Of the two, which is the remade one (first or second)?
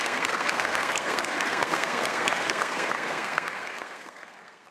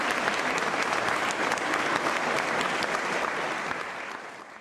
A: first